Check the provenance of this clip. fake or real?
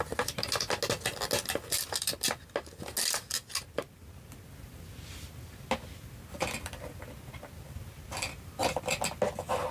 real